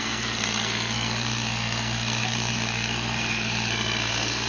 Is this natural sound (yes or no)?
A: no